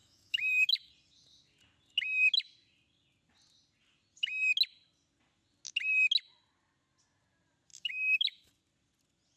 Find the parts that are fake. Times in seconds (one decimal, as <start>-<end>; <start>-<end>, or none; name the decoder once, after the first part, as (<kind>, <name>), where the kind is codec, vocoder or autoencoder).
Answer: 0.0-0.9 (autoencoder, DAC-VAE); 7.7-8.5